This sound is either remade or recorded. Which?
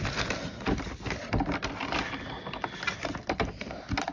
recorded